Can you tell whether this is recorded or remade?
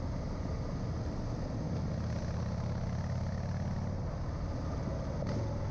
recorded